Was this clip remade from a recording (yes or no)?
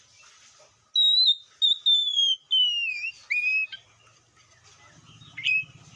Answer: no